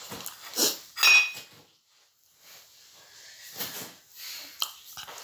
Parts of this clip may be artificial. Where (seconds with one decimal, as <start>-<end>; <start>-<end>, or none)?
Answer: none